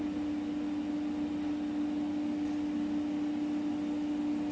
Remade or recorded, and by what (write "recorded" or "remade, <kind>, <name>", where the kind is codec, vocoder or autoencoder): recorded